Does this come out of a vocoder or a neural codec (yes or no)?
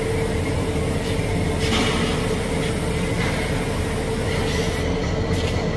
no